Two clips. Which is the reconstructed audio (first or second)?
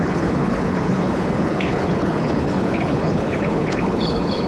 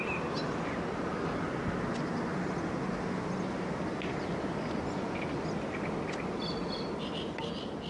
first